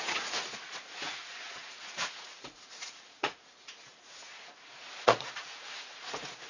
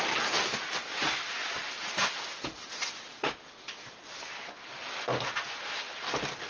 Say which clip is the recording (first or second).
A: second